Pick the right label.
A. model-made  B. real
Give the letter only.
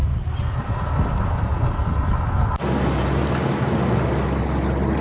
B